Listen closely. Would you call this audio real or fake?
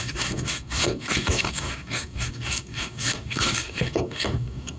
fake